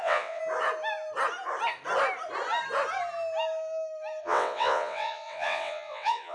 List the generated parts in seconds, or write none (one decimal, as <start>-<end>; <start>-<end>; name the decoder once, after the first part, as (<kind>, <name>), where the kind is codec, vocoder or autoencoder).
0.0-0.4 (vocoder, WaveNeXt); 4.2-6.3